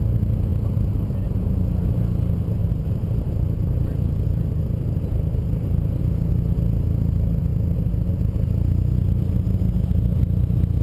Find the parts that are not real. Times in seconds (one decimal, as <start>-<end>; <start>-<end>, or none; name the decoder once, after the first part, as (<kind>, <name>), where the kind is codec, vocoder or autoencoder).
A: 0.5-1.9 (vocoder, BigVGAN v2); 2.6-6.0